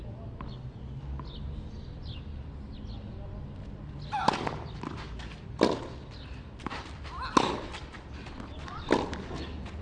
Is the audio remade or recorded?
recorded